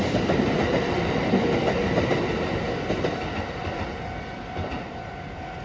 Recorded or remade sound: remade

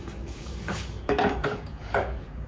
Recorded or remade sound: remade